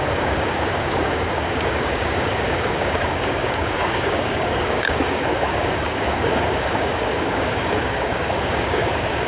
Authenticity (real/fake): fake